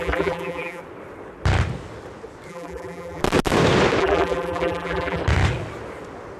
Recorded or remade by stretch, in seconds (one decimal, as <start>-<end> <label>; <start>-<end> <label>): 0.0-0.8 remade; 0.8-2.5 recorded; 2.5-3.2 remade; 3.2-4.0 recorded; 4.0-5.2 remade; 5.2-6.4 recorded